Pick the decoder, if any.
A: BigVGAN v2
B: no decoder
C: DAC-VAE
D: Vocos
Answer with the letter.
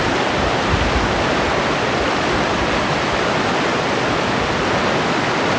B